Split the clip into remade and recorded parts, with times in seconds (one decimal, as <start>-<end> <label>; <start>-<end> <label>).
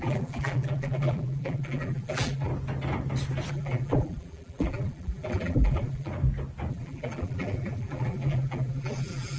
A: 0.0-2.5 remade; 2.5-3.5 recorded; 3.5-6.1 remade; 6.1-6.7 recorded; 6.7-9.4 remade